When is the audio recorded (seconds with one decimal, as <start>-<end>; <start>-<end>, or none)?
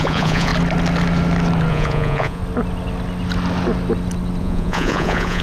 0.5-1.7; 2.4-4.4